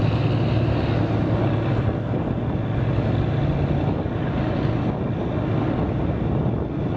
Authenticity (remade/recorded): recorded